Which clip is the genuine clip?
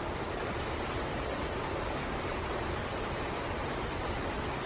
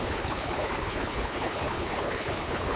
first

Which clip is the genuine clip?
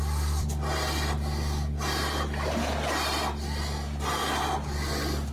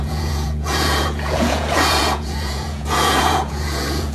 first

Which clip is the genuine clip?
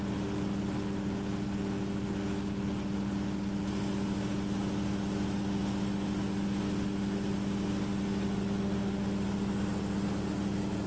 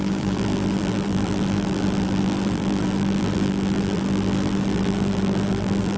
first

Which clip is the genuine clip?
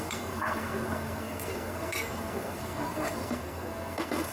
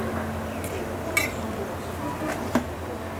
second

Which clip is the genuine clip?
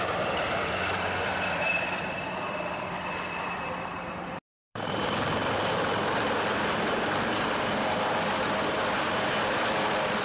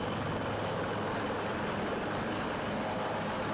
second